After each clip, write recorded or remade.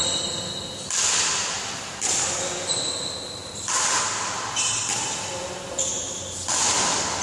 recorded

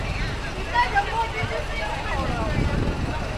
recorded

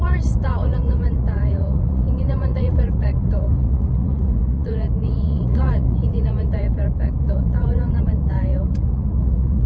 remade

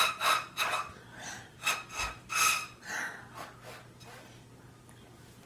recorded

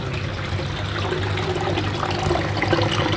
recorded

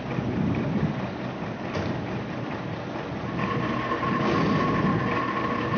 recorded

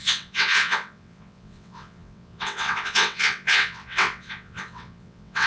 remade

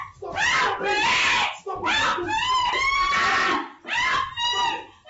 recorded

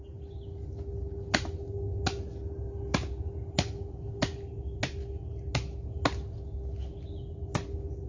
recorded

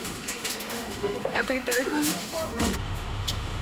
remade